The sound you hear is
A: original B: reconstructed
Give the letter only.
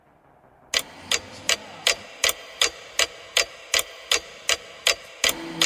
A